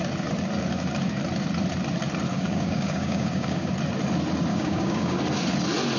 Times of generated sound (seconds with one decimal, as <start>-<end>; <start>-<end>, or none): 2.3-3.7; 4.5-5.2